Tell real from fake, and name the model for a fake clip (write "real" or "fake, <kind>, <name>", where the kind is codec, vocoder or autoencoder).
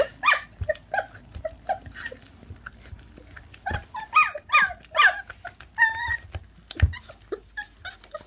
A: real